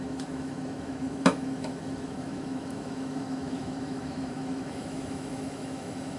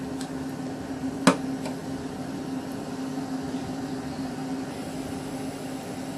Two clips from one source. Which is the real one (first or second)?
second